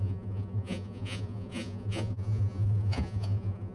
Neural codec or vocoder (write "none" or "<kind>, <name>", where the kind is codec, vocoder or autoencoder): vocoder, Vocos